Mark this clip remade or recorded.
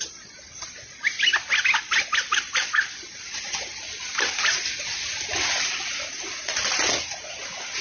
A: recorded